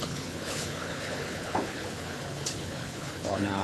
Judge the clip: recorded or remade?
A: remade